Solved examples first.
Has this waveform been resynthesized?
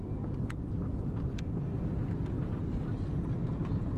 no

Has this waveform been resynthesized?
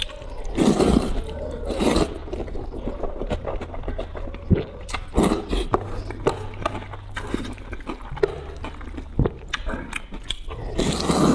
no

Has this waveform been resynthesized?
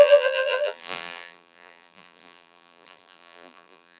yes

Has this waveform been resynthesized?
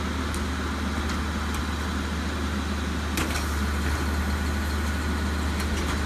no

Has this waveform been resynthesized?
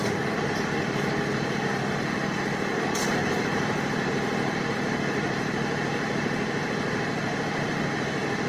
yes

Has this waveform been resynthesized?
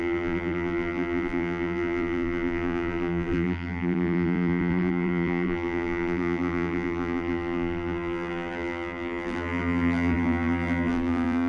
yes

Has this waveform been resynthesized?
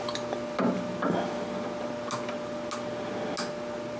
no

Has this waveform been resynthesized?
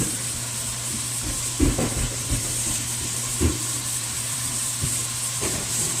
yes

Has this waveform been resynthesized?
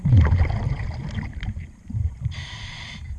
no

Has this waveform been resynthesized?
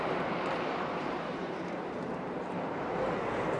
yes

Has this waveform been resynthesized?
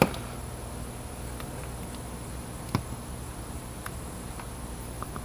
no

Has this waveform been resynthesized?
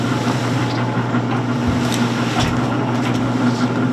no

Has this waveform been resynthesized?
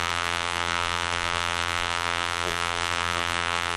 yes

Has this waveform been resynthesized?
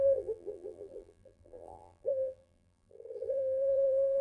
yes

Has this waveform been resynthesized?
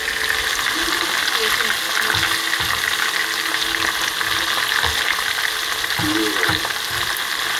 no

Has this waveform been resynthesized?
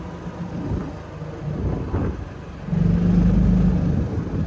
no